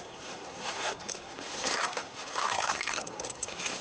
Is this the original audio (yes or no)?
no